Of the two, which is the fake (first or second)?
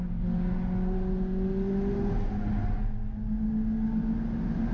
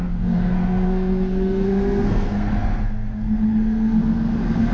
second